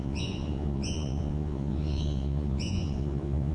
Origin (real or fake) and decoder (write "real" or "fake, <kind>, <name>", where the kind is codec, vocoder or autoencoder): fake, vocoder, Vocos